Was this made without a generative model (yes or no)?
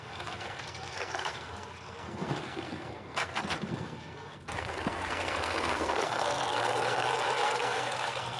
no